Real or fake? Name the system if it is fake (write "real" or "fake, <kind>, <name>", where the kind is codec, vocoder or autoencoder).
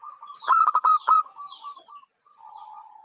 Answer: fake, vocoder, Vocos